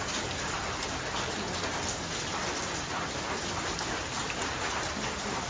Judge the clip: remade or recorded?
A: recorded